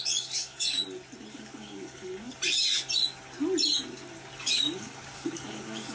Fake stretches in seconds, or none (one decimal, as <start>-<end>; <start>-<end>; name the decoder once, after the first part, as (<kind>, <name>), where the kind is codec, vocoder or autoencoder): 0.0-0.8 (codec, DAC); 1.3-2.3; 4.4-5.9